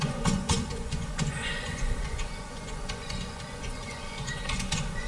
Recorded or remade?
remade